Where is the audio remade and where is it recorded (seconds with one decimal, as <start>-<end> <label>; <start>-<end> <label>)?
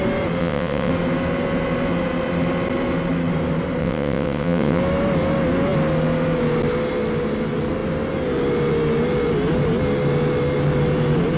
0.0-0.4 recorded; 0.4-0.9 remade; 0.9-3.8 recorded; 3.8-4.8 remade; 4.8-11.4 recorded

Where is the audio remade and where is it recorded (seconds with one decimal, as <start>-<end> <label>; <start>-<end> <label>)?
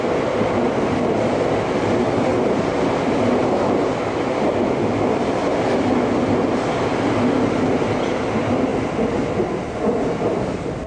0.0-2.3 recorded; 2.3-3.0 remade; 3.0-3.4 recorded; 3.4-3.9 remade; 3.9-10.9 recorded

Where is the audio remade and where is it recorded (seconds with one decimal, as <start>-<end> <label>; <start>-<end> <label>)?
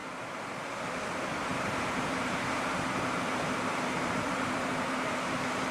0.0-5.7 remade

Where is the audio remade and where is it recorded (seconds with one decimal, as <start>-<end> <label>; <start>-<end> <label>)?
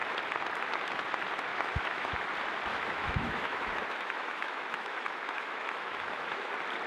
0.0-1.5 recorded; 1.5-2.1 remade; 2.1-2.7 recorded; 2.7-6.5 remade; 6.5-6.9 recorded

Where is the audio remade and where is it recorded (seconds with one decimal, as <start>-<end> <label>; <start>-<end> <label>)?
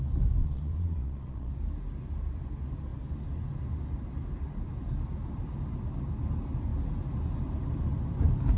0.0-0.4 recorded; 0.4-1.5 remade; 1.5-8.6 recorded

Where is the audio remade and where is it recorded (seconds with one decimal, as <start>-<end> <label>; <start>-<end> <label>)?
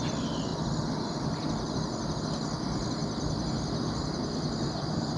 0.0-5.2 recorded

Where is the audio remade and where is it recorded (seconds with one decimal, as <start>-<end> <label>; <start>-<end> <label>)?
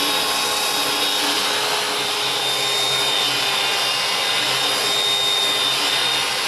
0.0-6.5 recorded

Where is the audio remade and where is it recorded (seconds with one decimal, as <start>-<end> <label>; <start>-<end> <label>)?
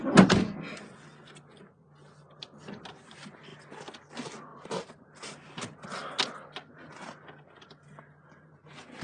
0.0-4.5 recorded; 4.5-5.3 remade; 5.3-9.0 recorded